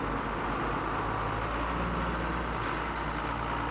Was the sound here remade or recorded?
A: recorded